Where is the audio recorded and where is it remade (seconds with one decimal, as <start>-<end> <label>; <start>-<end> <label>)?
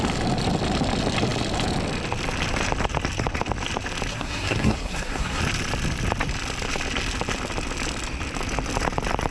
0.0-4.1 recorded; 4.1-5.4 remade; 5.4-9.3 recorded